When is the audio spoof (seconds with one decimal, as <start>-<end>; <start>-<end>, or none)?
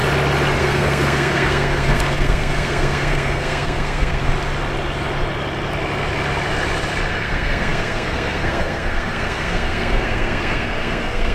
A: 0.6-4.3; 7.1-11.3